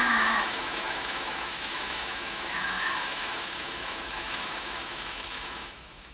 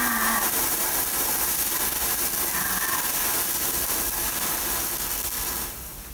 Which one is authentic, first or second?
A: second